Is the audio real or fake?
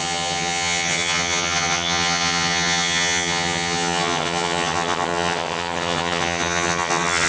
fake